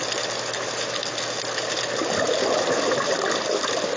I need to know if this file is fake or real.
real